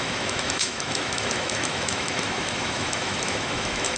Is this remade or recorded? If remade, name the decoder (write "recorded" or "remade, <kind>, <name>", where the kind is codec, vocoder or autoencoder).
remade, autoencoder, DAC-VAE